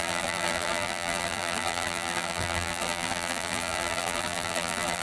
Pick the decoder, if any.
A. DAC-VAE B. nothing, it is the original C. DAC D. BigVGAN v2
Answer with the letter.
D